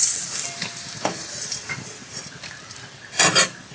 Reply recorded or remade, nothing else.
remade